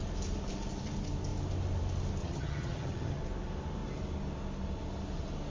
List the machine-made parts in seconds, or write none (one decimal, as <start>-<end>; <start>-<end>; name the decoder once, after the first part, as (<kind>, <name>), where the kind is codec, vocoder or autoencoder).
2.2-3.2 (vocoder, HiFi-GAN)